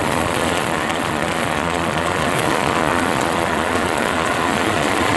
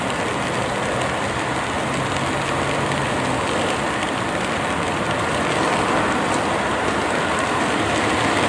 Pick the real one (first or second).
second